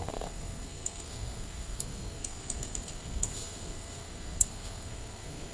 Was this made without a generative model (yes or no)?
no